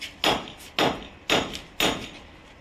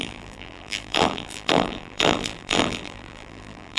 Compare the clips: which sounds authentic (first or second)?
first